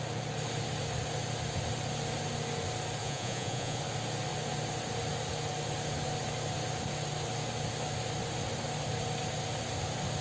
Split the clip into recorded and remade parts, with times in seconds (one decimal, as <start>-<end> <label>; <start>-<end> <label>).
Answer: 0.0-3.0 recorded; 3.0-3.8 remade; 3.8-10.2 recorded